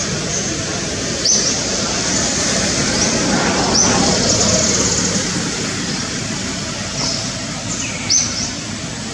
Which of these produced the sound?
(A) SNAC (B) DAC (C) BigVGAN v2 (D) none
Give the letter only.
D